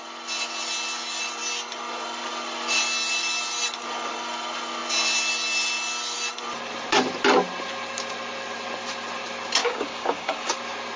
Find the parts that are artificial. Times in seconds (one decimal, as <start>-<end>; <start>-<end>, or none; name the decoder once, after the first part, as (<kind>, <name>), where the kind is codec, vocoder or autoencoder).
9.6-10.6 (codec, DAC)